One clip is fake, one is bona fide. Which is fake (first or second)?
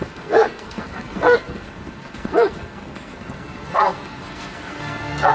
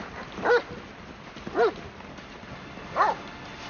first